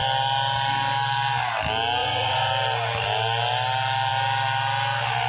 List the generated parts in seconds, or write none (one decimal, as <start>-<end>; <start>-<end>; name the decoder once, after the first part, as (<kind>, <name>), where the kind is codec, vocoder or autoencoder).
2.0-2.5 (vocoder, Vocos)